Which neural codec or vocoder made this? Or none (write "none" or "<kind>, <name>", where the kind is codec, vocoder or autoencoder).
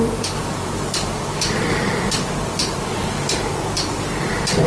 vocoder, BigVGAN v2